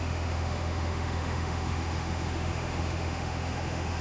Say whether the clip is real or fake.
fake